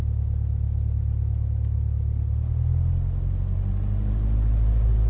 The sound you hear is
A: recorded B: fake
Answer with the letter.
A